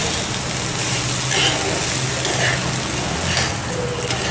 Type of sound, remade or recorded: recorded